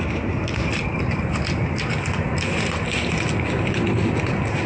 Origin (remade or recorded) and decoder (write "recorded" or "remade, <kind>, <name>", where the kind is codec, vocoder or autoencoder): recorded